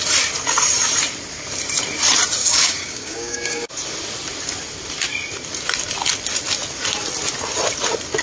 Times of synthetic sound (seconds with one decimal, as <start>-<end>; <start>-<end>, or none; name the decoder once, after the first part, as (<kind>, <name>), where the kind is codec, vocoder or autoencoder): 2.4-3.7 (codec, DAC)